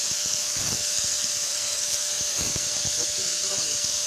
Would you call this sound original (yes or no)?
no